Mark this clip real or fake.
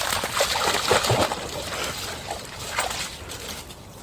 real